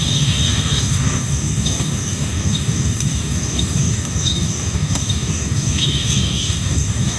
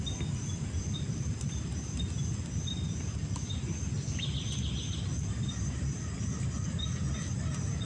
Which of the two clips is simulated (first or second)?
first